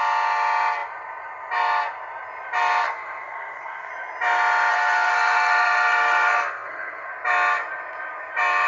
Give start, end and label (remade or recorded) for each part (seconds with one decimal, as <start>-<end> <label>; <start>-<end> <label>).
0.0-2.8 recorded; 2.8-3.9 remade; 3.9-4.7 recorded; 4.7-7.1 remade; 7.1-8.7 recorded